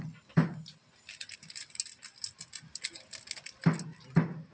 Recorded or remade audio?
recorded